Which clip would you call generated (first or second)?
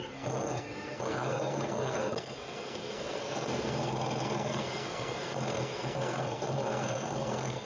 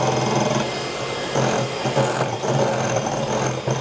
first